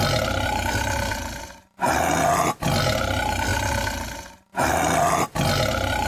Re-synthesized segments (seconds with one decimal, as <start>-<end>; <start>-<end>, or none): none